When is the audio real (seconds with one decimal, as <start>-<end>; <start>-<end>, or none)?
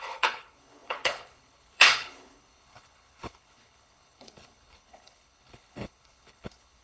none